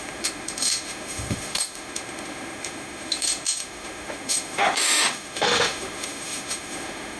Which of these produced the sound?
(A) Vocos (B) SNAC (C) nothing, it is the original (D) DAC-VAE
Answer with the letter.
D